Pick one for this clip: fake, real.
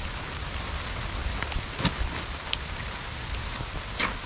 real